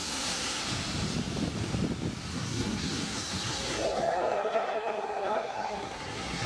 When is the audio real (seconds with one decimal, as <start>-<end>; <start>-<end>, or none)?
0.6-2.3

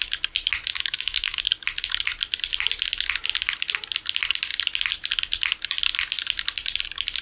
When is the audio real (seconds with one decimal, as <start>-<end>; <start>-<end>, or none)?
0.0-0.7; 1.4-7.2

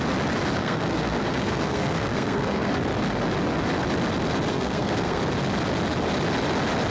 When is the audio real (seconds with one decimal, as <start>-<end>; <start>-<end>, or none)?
0.0-0.6; 2.7-4.5; 5.2-6.9

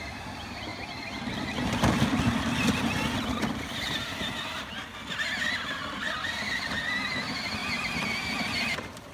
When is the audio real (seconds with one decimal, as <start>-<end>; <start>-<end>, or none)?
0.0-2.1; 4.7-5.8; 6.6-7.6

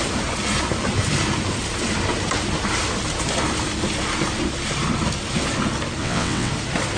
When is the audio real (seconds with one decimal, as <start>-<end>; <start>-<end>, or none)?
0.0-6.0; 6.5-7.0

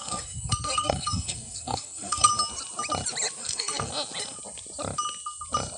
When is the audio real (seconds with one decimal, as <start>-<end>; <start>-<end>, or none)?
2.3-3.4; 3.9-5.8